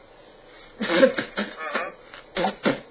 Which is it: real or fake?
real